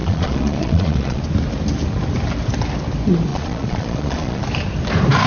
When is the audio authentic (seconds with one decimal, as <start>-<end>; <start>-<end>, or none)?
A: 1.2-3.3; 4.4-5.3